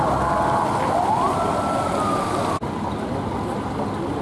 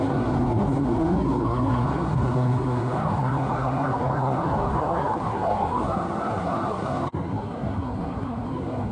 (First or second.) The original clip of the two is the first